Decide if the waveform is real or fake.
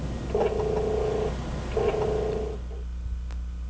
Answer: real